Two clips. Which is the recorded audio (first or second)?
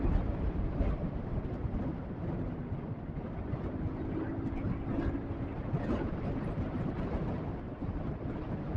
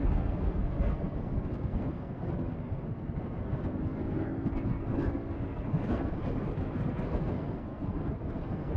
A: first